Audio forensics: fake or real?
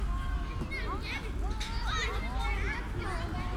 real